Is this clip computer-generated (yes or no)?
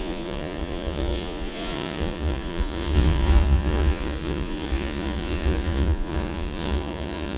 yes